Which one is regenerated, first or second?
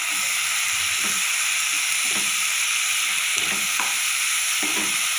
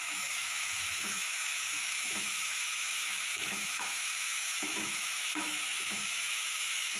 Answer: second